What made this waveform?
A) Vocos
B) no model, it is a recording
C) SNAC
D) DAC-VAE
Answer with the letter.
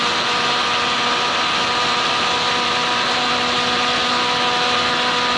B